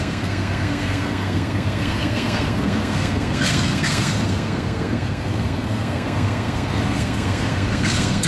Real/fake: fake